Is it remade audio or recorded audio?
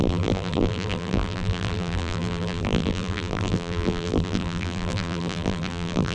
remade